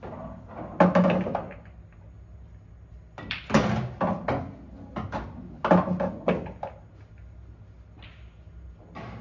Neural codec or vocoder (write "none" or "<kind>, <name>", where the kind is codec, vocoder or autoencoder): none